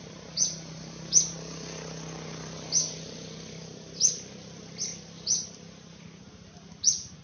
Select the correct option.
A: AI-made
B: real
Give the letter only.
B